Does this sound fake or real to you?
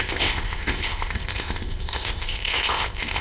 fake